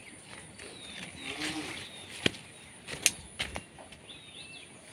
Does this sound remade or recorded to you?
recorded